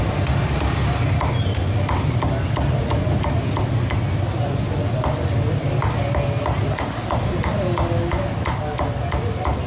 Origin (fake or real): real